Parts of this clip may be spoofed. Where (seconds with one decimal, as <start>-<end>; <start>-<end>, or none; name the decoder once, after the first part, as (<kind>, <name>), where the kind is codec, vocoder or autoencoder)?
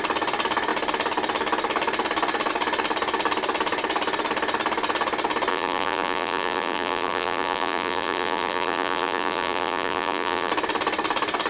5.5-10.5 (vocoder, BigVGAN v2)